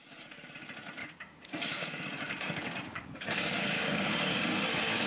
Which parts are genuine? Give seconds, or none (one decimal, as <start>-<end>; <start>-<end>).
0.0-1.0; 4.1-5.1